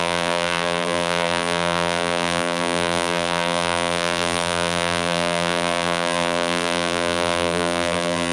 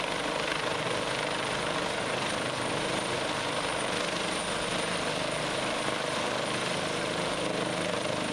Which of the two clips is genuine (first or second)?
second